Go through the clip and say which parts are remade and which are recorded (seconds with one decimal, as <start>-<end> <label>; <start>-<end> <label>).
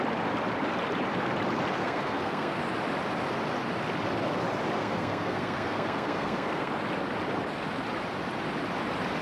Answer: 0.0-1.8 recorded; 1.8-2.6 remade; 2.6-4.8 recorded; 4.8-6.7 remade; 6.7-9.2 recorded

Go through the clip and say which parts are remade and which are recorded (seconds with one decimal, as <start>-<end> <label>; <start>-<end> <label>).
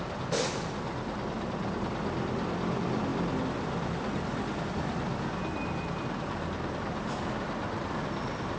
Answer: 0.0-8.6 recorded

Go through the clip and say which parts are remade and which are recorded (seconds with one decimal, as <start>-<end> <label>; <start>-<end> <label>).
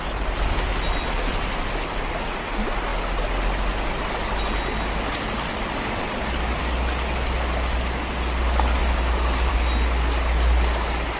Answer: 0.0-8.8 recorded; 8.8-9.5 remade; 9.5-11.2 recorded